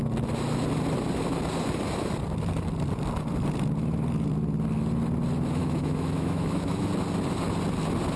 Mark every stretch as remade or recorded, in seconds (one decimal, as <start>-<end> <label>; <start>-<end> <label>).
0.0-5.6 recorded; 5.6-6.9 remade; 6.9-8.2 recorded